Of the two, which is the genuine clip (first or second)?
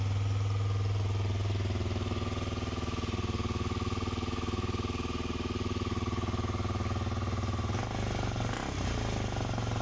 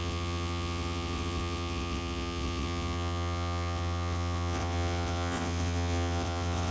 first